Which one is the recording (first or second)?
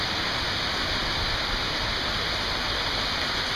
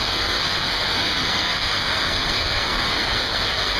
first